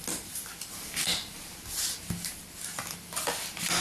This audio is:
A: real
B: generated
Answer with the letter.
A